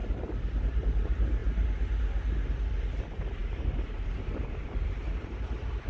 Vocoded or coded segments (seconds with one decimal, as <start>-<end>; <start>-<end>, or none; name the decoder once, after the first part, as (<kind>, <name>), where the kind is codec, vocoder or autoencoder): 0.6-1.4 (vocoder, BigVGAN v2); 3.0-5.9

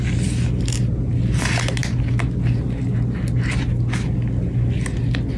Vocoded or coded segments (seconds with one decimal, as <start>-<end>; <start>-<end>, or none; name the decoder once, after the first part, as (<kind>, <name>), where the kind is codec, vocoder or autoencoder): none

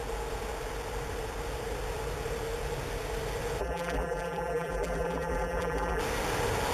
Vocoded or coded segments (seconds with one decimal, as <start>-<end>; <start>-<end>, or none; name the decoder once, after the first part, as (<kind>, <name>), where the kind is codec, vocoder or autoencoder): 3.6-6.0 (vocoder, BigVGAN v2)

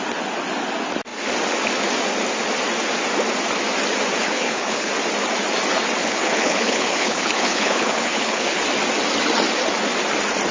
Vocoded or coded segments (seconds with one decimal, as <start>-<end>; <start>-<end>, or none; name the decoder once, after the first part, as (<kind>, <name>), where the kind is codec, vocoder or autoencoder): 4.2-4.9 (codec, HILCodec); 6.0-8.6

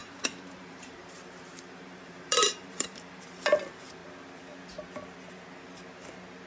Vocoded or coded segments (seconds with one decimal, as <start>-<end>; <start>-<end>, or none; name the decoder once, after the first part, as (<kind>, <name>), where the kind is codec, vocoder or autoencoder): 0.0-4.0 (vocoder, BigVGAN v2)

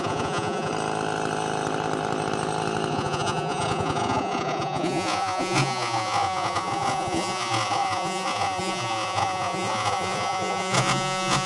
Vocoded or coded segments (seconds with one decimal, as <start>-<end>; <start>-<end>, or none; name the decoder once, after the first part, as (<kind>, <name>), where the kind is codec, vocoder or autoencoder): 0.0-0.7 (vocoder, Vocos); 2.9-11.5